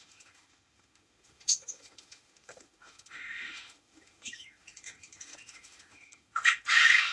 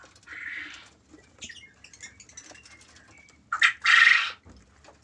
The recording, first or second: second